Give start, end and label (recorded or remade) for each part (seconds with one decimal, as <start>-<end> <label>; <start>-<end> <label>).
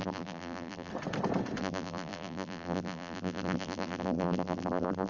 0.0-0.9 remade; 0.9-1.6 recorded; 1.6-5.1 remade